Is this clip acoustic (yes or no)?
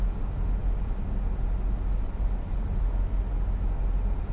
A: yes